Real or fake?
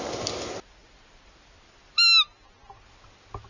real